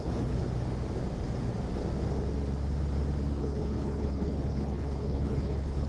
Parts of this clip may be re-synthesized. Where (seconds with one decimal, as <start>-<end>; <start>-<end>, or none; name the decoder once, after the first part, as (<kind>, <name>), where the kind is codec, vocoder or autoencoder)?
0.0-0.4 (codec, HILCodec); 3.4-5.9